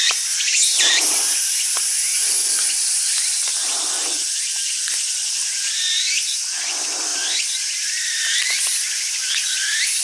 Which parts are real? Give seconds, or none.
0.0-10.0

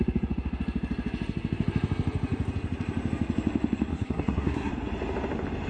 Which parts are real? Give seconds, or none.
0.0-3.9; 4.7-5.7

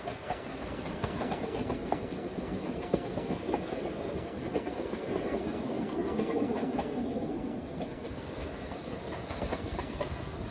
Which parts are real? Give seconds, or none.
none

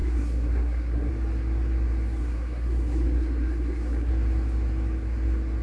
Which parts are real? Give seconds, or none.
1.1-2.2; 4.1-5.6